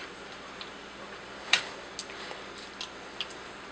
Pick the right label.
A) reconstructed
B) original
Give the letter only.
B